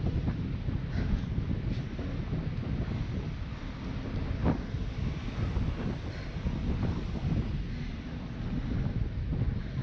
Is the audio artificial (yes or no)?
no